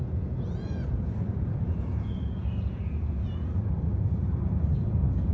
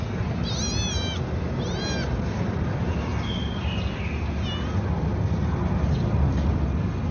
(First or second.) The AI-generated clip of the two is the first